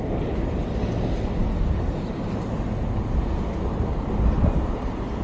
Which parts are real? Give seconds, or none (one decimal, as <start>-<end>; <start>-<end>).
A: 0.0-5.2

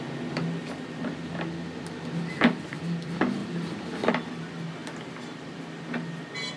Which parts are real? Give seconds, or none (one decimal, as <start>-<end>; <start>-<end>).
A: 0.0-6.6

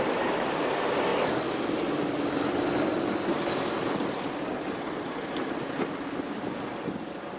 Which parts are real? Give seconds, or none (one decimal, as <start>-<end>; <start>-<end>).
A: 0.0-7.4

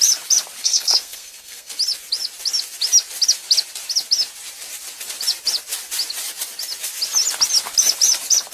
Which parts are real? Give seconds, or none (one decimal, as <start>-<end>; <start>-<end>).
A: 0.0-0.6; 1.7-8.5

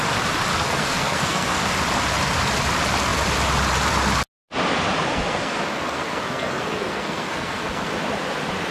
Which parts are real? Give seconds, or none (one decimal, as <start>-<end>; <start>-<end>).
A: 0.0-0.5; 1.7-5.1; 7.9-8.7

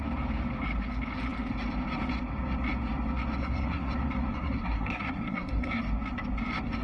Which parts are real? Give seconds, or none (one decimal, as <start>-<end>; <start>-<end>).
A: 0.0-3.4; 3.9-4.3; 5.8-6.8